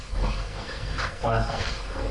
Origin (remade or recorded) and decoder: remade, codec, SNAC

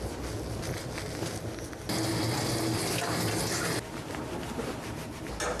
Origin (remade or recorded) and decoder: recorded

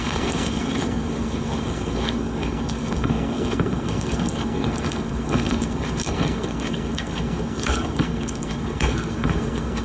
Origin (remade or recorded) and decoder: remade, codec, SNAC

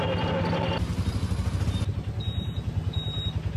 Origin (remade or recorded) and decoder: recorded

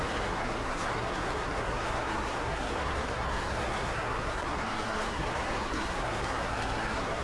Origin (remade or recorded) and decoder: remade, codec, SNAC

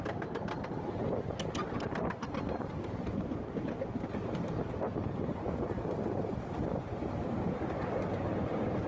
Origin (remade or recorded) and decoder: recorded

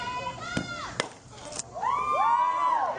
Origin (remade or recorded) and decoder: recorded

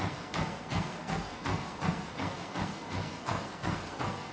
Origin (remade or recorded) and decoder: remade, codec, SNAC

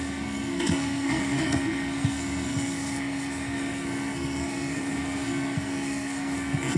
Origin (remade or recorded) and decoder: remade, codec, SNAC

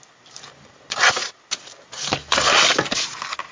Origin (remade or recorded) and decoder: recorded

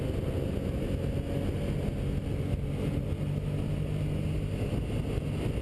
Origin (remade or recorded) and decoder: recorded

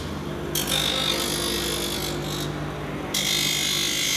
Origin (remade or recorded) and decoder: recorded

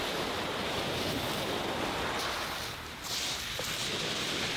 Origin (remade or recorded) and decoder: recorded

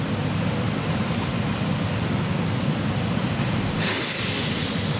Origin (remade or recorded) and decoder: recorded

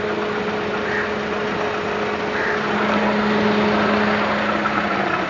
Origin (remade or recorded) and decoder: recorded